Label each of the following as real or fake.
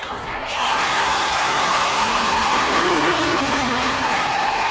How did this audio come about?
fake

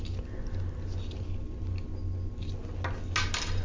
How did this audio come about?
real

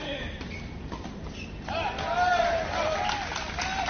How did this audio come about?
real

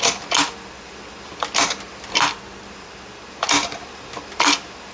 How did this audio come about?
real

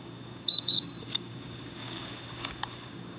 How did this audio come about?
fake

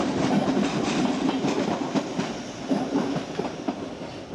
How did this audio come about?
real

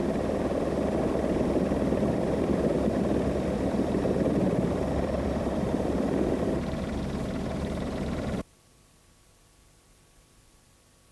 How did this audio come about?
fake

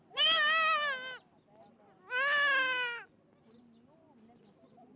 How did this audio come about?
real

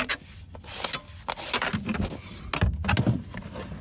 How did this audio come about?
real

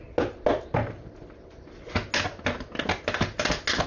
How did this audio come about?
real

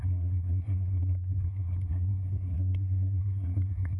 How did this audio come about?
fake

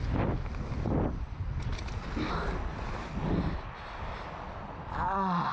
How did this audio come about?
real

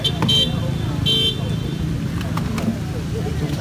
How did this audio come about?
real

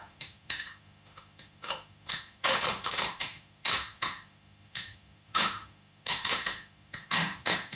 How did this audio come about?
fake